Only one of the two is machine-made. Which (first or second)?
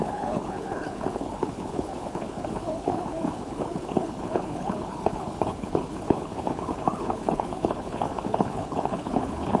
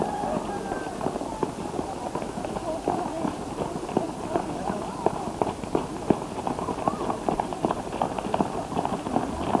first